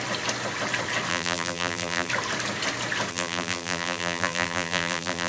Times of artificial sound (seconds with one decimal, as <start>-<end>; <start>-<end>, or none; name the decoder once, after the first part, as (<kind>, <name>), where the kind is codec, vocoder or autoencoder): 1.1-2.1 (vocoder, BigVGAN v2); 3.1-5.3